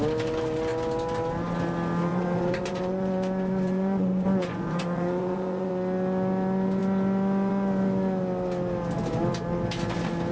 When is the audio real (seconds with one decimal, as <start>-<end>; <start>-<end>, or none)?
0.0-2.1; 5.7-10.3